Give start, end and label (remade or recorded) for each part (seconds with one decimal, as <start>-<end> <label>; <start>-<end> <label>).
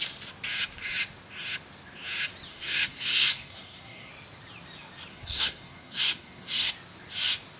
0.0-2.5 recorded; 2.5-4.1 remade; 4.1-5.1 recorded; 5.1-6.7 remade; 6.7-7.6 recorded